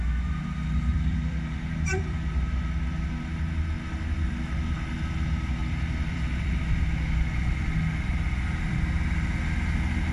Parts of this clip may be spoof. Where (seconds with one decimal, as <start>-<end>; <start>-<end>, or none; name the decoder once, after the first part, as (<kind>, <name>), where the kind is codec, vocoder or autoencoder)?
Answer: 0.9-2.2 (vocoder, BigVGAN v2); 5.6-6.6